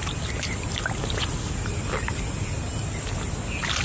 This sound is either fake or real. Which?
real